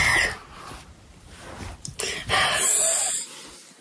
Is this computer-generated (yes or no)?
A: no